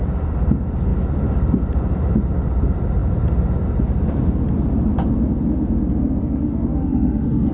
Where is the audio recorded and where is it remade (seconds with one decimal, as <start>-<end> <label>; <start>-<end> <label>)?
0.0-6.2 recorded; 6.2-7.5 remade